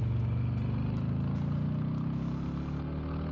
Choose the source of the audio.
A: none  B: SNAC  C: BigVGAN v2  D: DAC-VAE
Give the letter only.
A